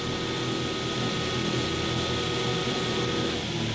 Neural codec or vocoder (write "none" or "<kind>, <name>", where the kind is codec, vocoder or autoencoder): none